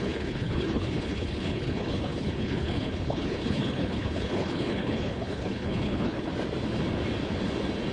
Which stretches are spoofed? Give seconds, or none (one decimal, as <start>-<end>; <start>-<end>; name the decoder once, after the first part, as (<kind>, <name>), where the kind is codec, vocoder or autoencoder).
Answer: 0.0-6.3 (codec, HILCodec)